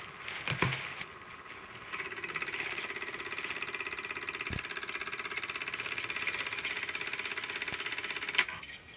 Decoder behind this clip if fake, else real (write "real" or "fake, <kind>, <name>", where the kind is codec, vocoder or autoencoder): real